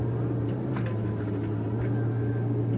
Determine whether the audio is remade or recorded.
recorded